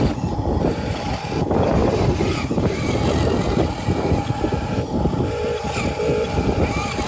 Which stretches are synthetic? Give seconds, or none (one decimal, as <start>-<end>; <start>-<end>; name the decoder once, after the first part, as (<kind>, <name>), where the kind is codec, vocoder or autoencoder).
1.8-2.9 (vocoder, BigVGAN v2)

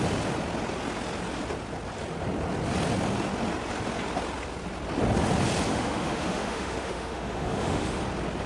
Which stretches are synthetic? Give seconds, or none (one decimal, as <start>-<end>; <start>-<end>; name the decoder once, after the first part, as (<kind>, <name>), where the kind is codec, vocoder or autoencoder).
5.7-8.0 (autoencoder, DAC-VAE)

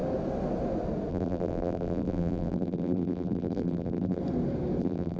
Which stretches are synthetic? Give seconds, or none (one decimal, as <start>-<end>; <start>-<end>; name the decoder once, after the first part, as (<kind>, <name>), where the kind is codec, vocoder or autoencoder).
1.1-4.2 (vocoder, BigVGAN v2); 4.8-5.2

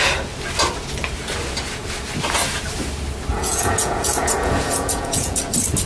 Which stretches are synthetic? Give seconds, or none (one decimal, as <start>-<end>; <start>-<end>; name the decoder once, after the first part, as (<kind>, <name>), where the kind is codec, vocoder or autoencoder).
3.3-5.4 (vocoder, Vocos)

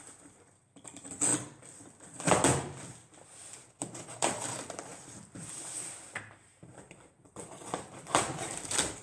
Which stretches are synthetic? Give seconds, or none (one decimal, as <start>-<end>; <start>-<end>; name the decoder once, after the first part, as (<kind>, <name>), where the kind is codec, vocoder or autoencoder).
none